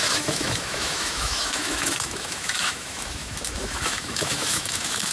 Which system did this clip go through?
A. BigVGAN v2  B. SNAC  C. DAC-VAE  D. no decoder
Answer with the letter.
C